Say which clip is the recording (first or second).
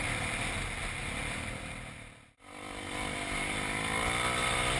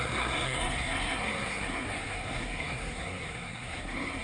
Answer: first